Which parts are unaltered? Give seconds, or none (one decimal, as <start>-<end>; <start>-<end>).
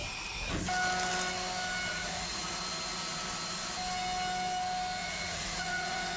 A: 0.0-1.9; 2.6-5.0